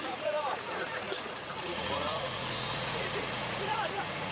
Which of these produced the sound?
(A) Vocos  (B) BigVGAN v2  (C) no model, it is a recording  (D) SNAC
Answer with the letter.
A